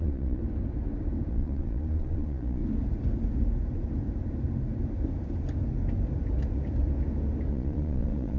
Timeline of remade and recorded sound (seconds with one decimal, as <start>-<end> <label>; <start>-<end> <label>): 0.0-0.4 remade; 0.4-1.3 recorded; 1.3-2.6 remade; 2.6-7.5 recorded; 7.5-8.4 remade